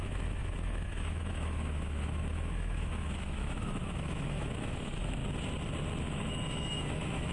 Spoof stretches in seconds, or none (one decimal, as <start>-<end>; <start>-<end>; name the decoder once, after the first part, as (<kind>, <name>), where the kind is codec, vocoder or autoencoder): 0.0-5.2 (autoencoder, DAC-VAE); 6.0-7.3